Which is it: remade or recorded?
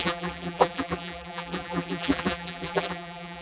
remade